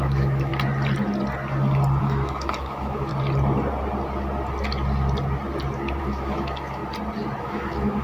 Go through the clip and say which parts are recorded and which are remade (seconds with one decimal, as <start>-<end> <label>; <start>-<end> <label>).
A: 0.0-0.5 remade; 0.5-2.0 recorded; 2.0-3.1 remade; 3.1-6.0 recorded; 6.0-6.8 remade; 6.8-7.4 recorded; 7.4-8.0 remade